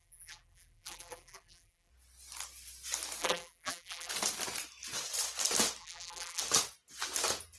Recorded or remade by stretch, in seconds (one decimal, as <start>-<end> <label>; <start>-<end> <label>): 0.0-1.9 remade; 1.9-3.2 recorded; 3.2-4.1 remade; 4.1-5.8 recorded; 5.8-6.4 remade; 6.4-7.6 recorded